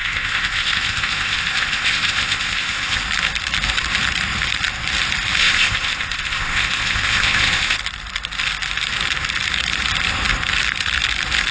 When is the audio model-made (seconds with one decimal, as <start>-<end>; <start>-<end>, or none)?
0.0-3.0; 5.4-7.8